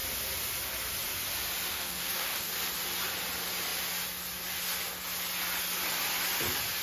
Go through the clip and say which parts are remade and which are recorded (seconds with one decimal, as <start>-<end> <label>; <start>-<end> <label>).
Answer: 0.0-1.7 recorded; 1.7-2.5 remade; 2.5-6.8 recorded